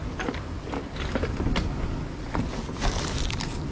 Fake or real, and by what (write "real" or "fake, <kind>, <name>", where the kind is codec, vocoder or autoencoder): real